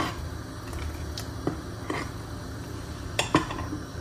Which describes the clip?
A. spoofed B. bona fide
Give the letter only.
B